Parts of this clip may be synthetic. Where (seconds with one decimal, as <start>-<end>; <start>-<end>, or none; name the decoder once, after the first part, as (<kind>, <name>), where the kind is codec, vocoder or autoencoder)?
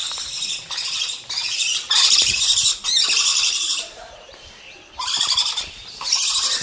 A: 0.0-2.4 (vocoder, BigVGAN v2); 3.3-4.8